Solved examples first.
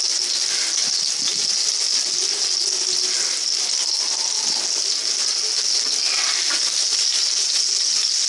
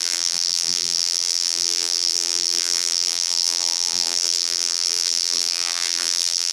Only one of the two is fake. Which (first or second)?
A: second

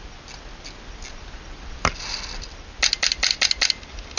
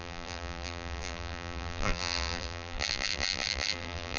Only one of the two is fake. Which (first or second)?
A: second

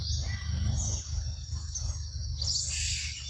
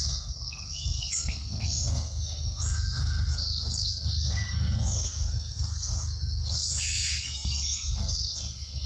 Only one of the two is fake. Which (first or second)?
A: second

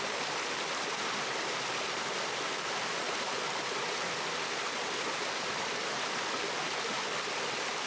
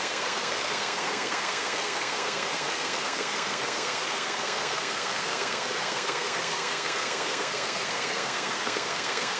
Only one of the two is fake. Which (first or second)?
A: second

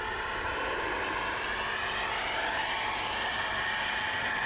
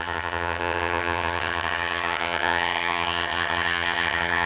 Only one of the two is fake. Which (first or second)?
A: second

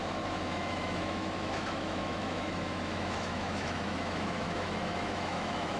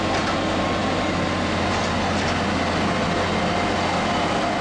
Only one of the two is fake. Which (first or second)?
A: first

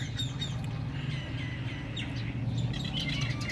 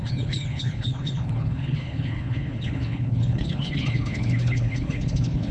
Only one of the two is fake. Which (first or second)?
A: second